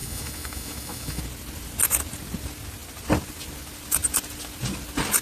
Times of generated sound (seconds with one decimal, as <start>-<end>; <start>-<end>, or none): 0.0-1.2